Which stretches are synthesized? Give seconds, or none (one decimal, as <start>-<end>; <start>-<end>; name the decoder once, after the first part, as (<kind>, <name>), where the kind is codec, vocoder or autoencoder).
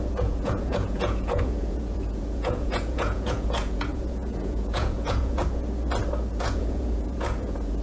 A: 0.0-5.4 (vocoder, Vocos); 6.3-7.8